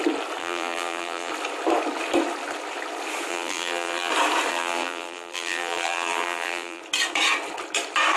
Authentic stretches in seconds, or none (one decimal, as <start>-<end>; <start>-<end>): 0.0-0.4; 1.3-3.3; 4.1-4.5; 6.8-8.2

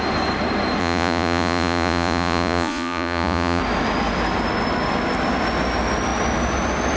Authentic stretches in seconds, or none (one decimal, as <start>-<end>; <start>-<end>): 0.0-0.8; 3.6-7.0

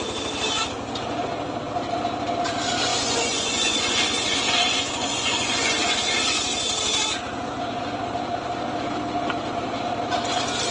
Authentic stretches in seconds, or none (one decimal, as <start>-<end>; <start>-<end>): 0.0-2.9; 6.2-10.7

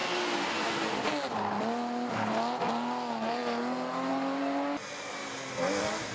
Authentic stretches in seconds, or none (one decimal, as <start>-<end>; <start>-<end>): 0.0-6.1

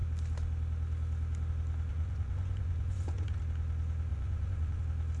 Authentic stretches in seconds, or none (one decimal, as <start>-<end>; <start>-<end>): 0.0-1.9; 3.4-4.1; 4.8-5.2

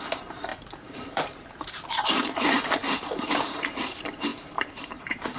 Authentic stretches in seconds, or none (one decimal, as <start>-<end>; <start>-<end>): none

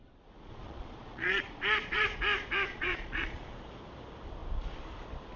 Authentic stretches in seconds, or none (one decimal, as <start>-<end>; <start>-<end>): 2.2-2.7; 3.4-5.4

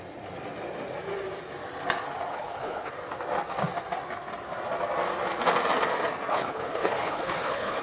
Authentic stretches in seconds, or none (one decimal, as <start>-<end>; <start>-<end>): 0.0-2.3; 2.9-6.3